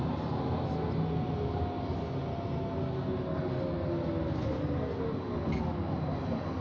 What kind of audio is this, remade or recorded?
recorded